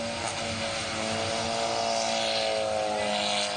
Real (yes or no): yes